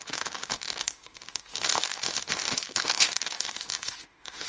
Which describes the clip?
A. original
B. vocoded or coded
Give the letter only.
B